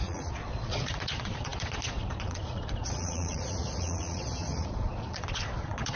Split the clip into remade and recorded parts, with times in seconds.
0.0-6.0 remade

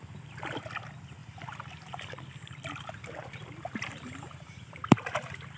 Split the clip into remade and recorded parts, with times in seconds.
0.0-5.6 recorded

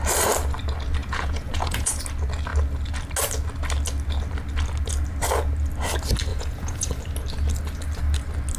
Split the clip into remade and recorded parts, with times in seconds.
0.0-1.0 recorded; 1.0-2.0 remade; 2.0-6.3 recorded; 6.3-6.9 remade; 6.9-8.6 recorded